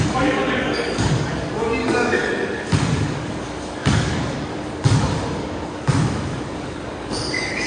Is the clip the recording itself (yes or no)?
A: no